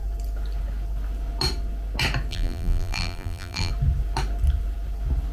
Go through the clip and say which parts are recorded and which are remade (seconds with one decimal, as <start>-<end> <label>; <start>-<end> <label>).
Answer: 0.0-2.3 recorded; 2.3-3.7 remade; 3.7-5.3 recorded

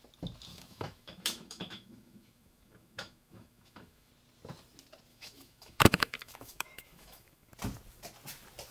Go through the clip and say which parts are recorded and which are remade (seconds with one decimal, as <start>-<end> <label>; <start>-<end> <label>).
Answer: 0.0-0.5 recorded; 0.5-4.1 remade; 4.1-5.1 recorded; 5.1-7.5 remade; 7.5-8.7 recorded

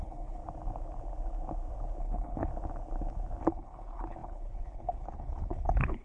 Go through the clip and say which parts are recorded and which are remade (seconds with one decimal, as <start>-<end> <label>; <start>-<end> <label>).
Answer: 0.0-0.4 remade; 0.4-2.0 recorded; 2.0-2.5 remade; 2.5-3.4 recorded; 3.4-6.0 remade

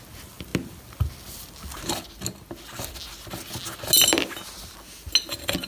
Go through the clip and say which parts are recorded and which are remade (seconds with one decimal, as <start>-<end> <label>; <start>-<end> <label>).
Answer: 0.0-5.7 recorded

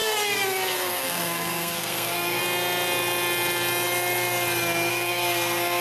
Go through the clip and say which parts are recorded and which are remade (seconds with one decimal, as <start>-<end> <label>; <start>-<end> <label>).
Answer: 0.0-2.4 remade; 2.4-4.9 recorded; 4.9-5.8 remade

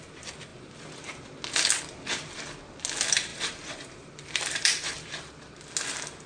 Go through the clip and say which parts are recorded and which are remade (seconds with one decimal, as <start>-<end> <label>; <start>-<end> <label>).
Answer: 0.0-3.3 recorded; 3.3-5.2 remade; 5.2-6.3 recorded

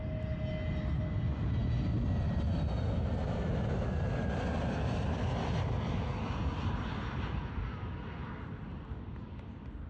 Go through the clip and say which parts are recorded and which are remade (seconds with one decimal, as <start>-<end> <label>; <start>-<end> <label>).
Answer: 0.0-9.9 recorded

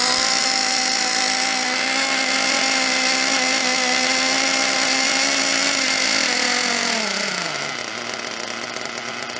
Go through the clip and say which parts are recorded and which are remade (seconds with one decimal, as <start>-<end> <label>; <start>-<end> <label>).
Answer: 0.0-9.4 recorded